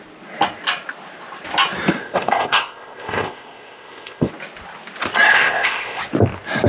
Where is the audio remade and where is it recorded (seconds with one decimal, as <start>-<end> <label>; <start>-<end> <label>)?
0.0-2.0 recorded; 2.0-4.3 remade; 4.3-5.3 recorded; 5.3-6.0 remade; 6.0-6.7 recorded